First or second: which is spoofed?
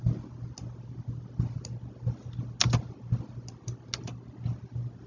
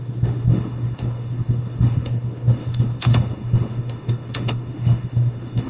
second